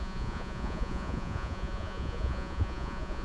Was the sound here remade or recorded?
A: remade